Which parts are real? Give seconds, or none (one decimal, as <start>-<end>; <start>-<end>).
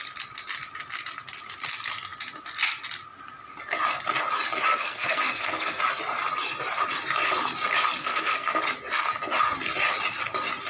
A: 0.0-4.7; 5.8-8.0; 8.6-10.7